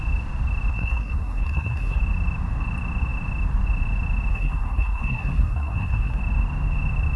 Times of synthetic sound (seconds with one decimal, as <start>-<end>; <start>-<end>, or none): 0.7-2.0; 4.3-6.2